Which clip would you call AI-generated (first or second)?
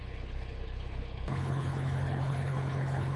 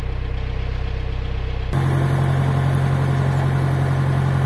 first